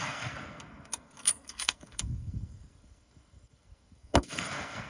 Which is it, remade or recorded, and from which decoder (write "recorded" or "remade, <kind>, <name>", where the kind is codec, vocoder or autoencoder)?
remade, codec, SNAC